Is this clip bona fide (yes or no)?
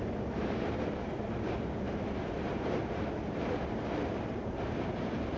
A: no